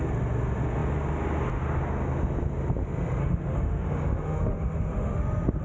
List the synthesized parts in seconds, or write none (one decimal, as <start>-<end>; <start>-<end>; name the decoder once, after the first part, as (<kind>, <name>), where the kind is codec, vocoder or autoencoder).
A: 3.2-5.6 (autoencoder, DAC-VAE)